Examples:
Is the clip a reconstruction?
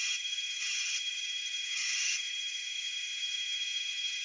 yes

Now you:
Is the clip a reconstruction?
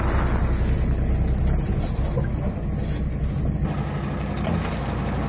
no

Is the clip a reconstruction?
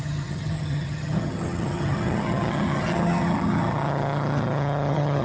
yes